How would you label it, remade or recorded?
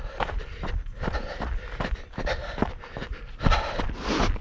recorded